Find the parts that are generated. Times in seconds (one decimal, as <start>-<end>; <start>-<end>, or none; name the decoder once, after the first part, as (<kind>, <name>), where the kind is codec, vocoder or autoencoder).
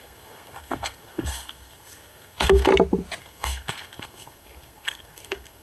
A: 0.0-2.7 (codec, SNAC); 3.2-5.6